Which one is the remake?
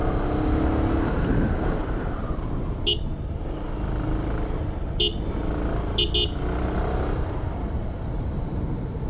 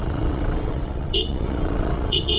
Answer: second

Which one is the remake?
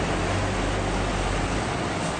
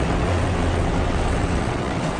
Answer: second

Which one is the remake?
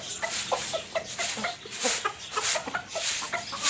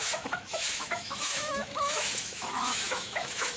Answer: second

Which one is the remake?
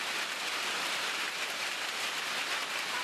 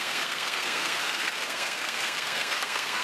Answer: second